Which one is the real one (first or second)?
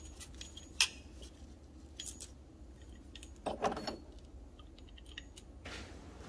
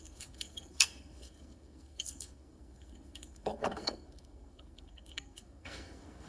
first